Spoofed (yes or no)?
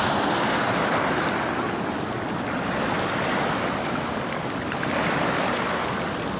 no